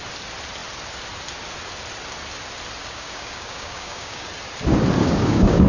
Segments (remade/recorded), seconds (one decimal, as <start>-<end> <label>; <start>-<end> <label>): 0.0-2.8 recorded; 2.8-4.3 remade; 4.3-5.0 recorded; 5.0-5.7 remade